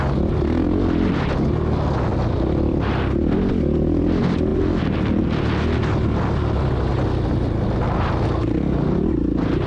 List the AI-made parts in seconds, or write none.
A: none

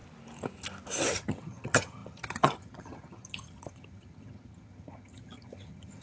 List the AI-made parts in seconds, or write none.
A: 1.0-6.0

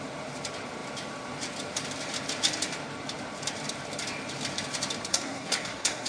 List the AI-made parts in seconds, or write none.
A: 5.1-6.1